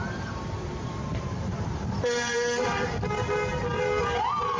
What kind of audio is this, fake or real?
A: fake